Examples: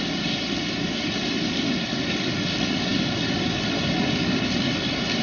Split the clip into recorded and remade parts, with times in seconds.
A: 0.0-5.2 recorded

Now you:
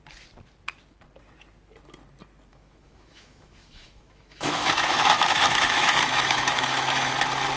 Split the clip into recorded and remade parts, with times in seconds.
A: 0.0-2.5 recorded; 2.5-7.1 remade; 7.1-7.6 recorded